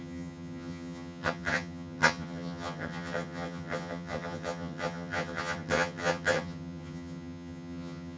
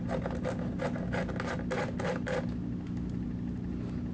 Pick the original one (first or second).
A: second